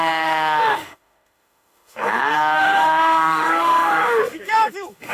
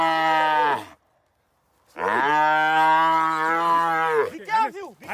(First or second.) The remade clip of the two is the first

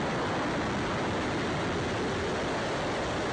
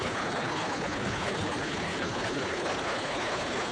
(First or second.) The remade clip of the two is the second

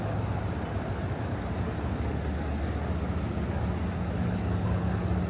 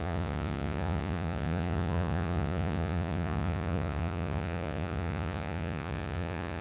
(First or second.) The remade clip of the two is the second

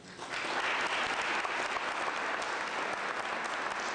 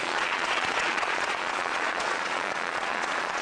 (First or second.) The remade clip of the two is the second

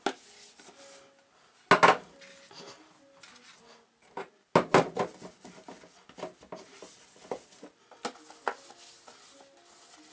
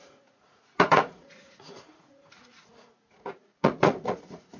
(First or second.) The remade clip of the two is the second